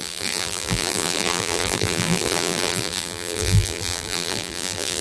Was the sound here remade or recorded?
remade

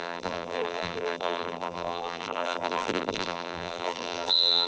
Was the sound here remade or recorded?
remade